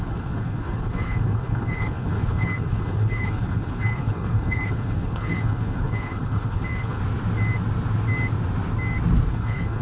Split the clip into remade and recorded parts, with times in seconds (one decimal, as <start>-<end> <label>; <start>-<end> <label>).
0.0-7.0 remade; 7.0-9.3 recorded; 9.3-9.8 remade